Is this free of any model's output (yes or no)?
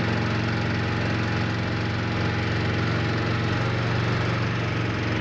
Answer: yes